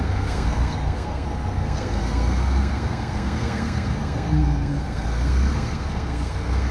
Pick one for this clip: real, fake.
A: fake